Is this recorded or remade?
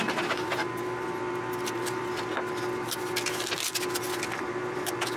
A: recorded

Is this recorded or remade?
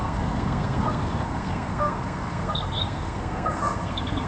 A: remade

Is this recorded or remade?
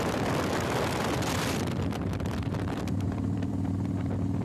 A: remade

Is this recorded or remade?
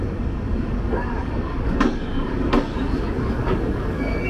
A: remade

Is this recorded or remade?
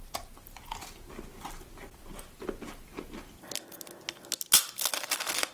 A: recorded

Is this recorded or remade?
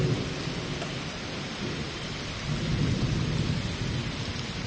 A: recorded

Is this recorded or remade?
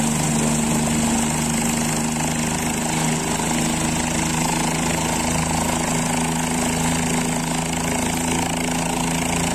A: recorded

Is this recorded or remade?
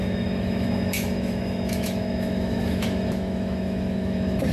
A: remade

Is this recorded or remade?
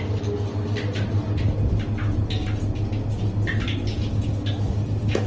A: recorded